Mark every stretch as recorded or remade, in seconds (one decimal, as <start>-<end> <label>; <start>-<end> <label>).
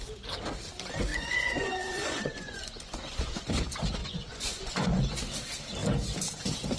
0.0-1.1 recorded; 1.1-3.5 remade; 3.5-4.0 recorded; 4.0-5.0 remade; 5.0-6.8 recorded